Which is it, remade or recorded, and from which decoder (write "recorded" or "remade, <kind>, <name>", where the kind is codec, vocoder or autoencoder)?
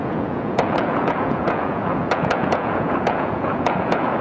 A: remade, vocoder, Vocos